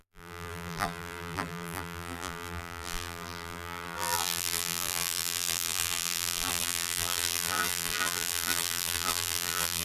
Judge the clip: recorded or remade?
remade